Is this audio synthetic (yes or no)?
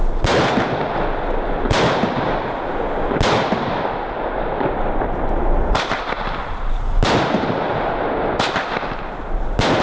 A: no